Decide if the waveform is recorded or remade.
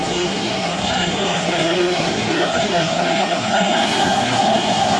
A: remade